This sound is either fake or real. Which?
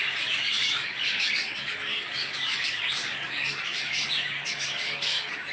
fake